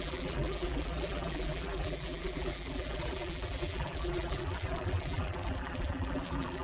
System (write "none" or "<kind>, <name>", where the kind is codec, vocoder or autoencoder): vocoder, BigVGAN v2